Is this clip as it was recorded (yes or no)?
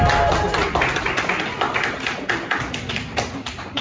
yes